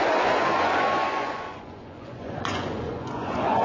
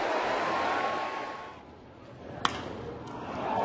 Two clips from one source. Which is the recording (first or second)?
second